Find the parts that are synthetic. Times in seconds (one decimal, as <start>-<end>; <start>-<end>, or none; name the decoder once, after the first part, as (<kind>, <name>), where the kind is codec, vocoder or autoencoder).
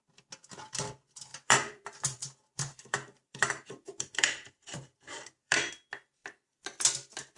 1.3-5.7 (vocoder, BigVGAN v2)